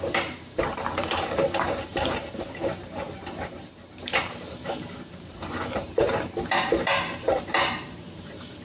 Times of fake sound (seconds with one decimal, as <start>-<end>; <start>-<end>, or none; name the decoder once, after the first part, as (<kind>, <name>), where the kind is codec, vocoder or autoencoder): 0.0-8.6 (vocoder, BigVGAN v2)